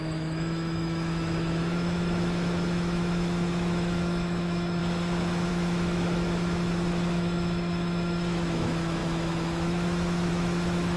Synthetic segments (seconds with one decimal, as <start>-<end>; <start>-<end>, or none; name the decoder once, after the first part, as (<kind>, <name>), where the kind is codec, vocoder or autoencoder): 0.0-4.8 (autoencoder, DAC-VAE); 5.5-11.0